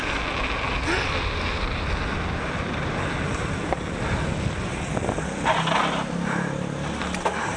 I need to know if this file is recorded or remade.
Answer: recorded